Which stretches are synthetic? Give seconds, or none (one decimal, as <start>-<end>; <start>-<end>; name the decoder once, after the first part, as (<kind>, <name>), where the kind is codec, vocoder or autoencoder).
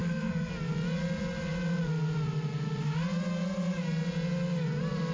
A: 0.0-0.5 (codec, SNAC)